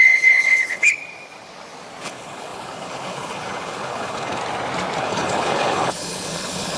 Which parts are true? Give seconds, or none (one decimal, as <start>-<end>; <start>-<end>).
1.0-2.0; 4.4-5.0